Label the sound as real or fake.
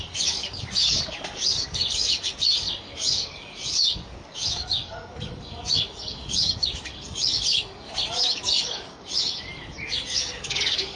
fake